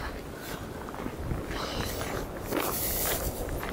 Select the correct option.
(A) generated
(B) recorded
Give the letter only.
B